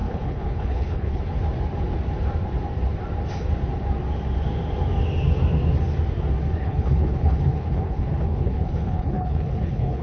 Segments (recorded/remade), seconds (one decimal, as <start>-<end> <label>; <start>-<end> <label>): 0.0-1.2 remade; 1.2-6.6 recorded; 6.6-10.0 remade